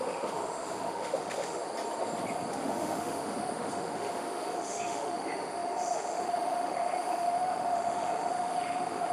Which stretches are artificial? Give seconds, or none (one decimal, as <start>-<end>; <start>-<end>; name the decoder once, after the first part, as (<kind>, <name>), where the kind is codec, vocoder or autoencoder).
0.0-1.6 (autoencoder, DAC-VAE); 2.5-9.1